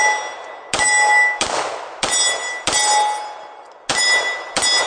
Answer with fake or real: real